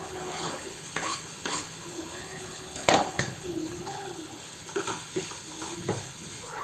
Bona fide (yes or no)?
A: no